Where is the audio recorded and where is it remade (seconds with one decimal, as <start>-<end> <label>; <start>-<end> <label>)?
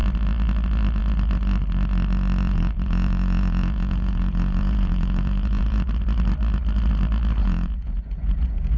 0.0-2.4 recorded; 2.4-5.9 remade; 5.9-7.4 recorded; 7.4-8.8 remade